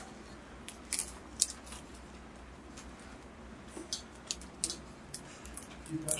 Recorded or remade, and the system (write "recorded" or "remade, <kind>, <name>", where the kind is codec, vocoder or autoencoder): recorded